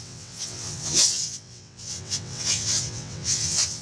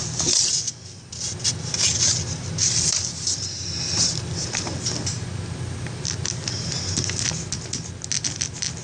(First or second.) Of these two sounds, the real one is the second